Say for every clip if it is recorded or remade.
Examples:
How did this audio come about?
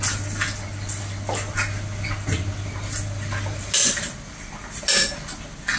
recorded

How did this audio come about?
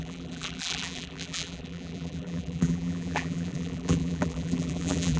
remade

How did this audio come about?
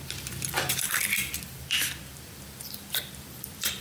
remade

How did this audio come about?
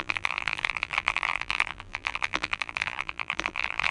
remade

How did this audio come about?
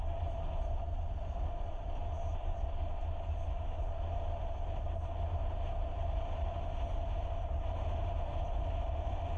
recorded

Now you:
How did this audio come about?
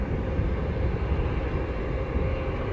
recorded